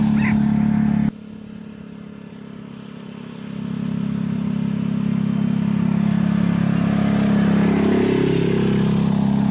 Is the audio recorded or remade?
recorded